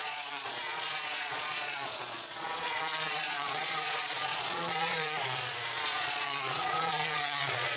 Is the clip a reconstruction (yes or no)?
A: yes